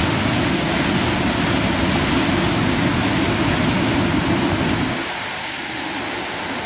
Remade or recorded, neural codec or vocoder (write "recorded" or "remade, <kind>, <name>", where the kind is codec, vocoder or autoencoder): recorded